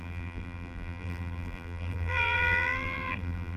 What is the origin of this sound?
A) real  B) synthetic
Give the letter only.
B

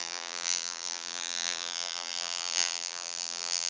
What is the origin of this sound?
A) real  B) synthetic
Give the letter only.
B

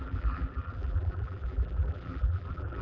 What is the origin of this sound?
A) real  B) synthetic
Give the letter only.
B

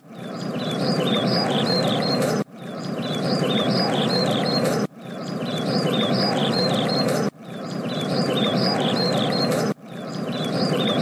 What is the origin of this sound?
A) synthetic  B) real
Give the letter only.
A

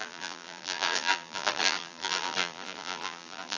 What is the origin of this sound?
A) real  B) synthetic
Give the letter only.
B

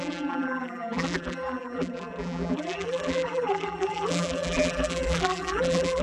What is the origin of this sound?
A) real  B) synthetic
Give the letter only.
B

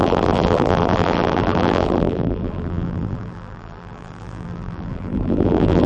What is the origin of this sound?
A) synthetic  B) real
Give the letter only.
A